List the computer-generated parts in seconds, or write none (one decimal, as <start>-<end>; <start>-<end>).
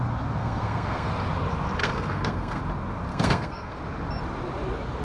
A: 0.4-1.1; 1.8-2.6; 3.1-3.8